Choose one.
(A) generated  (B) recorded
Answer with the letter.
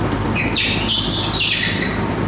B